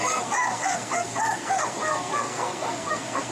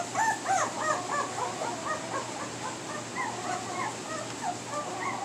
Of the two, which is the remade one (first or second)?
first